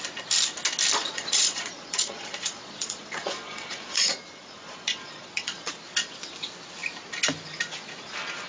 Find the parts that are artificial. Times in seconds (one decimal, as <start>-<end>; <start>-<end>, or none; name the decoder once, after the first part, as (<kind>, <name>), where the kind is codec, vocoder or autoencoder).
1.0-5.7 (vocoder, Vocos)